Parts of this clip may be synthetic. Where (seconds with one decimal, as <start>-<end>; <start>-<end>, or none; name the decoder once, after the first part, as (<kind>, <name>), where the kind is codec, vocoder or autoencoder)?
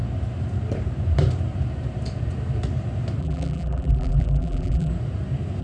3.2-4.9 (vocoder, BigVGAN v2)